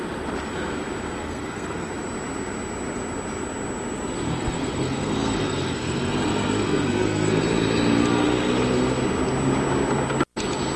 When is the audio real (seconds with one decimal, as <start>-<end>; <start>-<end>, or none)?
0.0-1.2; 1.9-4.3; 7.4-10.8